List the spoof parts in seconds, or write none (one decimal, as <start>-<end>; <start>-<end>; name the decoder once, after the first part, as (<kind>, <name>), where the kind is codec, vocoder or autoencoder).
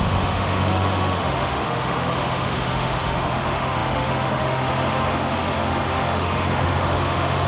0.0-7.5 (autoencoder, DAC-VAE)